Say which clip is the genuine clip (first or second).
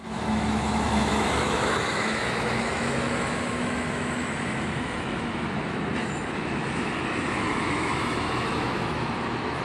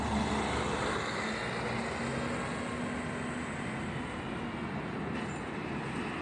second